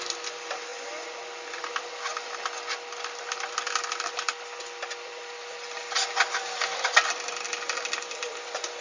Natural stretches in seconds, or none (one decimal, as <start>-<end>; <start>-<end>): 0.0-8.8